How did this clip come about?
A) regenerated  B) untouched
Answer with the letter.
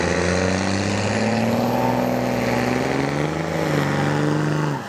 B